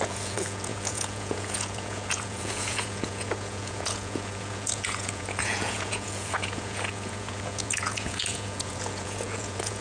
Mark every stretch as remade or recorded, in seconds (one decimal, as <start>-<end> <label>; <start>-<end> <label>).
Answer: 0.0-9.8 remade